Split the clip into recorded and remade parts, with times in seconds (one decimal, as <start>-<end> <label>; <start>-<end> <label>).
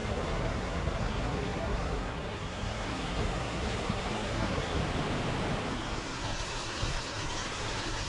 0.0-4.8 remade; 4.8-5.7 recorded; 5.7-8.1 remade